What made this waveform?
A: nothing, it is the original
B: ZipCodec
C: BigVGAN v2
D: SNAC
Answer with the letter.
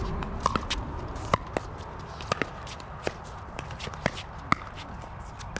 A